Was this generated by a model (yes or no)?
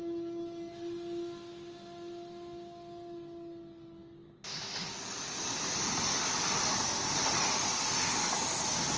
no